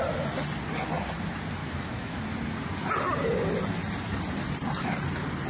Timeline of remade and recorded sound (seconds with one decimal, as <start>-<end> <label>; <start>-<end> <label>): 0.0-1.6 recorded; 1.6-2.2 remade; 2.2-5.5 recorded

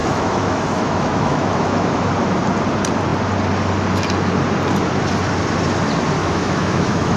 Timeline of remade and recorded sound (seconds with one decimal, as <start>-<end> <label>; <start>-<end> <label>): 0.0-1.9 remade; 1.9-6.2 recorded; 6.2-7.2 remade

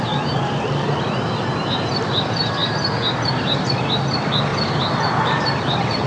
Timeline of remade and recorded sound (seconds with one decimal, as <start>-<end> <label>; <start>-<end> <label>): 0.0-6.1 recorded

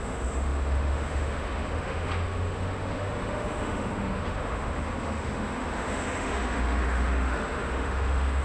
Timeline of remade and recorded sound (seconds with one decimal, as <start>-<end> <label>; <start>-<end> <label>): 0.0-8.4 remade

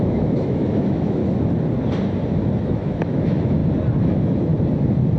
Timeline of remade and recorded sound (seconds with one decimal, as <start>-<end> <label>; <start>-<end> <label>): 0.0-1.2 remade; 1.2-2.6 recorded; 2.6-3.6 remade; 3.6-4.1 recorded; 4.1-4.5 remade; 4.5-5.2 recorded

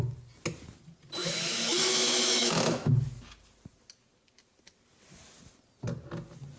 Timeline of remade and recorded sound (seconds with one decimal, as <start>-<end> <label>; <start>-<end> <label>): 0.0-1.2 recorded; 1.2-2.9 remade; 2.9-6.6 recorded